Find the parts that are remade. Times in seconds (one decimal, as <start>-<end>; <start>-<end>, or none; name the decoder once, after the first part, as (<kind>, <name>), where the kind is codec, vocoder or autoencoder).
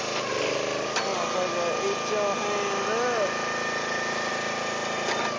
none